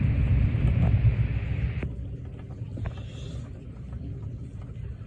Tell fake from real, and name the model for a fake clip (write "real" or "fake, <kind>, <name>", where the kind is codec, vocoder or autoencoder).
real